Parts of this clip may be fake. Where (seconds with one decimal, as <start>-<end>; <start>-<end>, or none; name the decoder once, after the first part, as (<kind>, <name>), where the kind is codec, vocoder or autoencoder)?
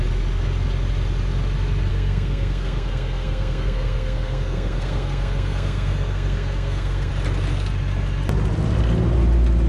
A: 1.9-7.1 (codec, SNAC)